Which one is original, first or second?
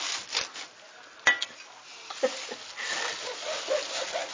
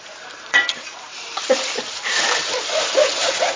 first